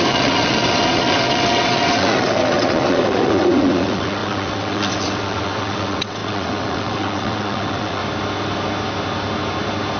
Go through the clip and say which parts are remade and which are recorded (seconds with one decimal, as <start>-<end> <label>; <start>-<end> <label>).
0.0-8.0 remade; 8.0-10.0 recorded